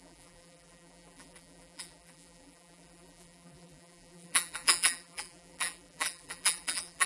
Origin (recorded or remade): remade